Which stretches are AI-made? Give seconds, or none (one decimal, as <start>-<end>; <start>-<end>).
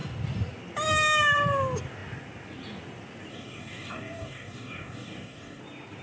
3.3-5.6